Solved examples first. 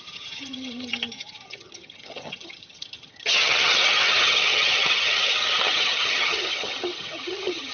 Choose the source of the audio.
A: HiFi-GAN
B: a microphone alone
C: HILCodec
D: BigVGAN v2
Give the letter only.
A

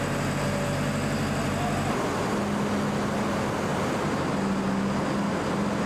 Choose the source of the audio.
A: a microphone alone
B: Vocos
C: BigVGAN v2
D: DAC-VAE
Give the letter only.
A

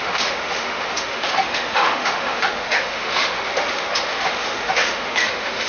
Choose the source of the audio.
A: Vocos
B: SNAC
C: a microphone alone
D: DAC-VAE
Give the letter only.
D